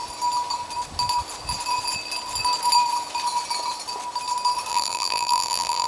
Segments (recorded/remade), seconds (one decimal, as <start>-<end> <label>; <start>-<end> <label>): 0.0-4.7 recorded; 4.7-5.9 remade